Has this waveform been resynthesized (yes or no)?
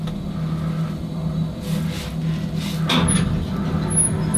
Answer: no